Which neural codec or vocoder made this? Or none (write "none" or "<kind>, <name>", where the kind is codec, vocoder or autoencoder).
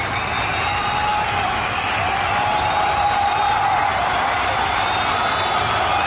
none